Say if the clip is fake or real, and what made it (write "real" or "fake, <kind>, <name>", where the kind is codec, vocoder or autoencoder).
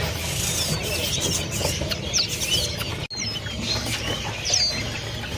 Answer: real